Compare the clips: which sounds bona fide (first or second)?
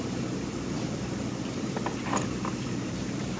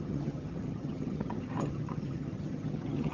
first